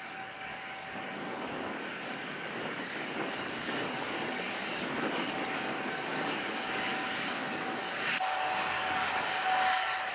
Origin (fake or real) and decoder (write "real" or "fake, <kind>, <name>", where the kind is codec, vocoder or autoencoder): fake, codec, DAC